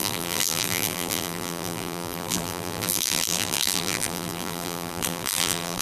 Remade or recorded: remade